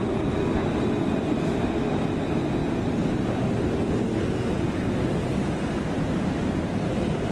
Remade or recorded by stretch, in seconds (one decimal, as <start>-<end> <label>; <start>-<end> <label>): 0.0-7.3 recorded